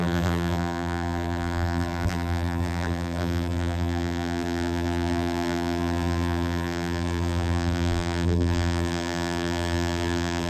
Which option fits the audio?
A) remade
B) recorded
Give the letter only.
A